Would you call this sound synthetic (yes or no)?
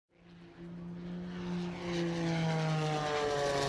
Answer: no